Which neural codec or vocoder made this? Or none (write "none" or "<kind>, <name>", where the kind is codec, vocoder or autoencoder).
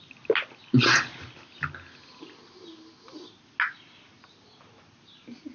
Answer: none